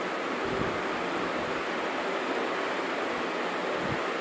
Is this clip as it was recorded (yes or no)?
yes